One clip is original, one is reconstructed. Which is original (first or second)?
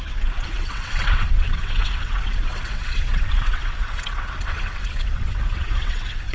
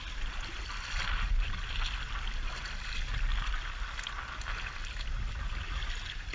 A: second